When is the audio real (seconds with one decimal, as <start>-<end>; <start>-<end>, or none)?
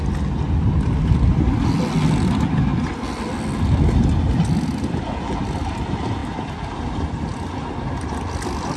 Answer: 0.0-8.8